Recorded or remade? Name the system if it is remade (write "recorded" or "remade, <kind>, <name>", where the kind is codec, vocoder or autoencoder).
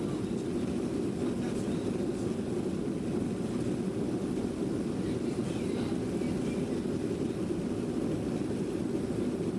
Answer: recorded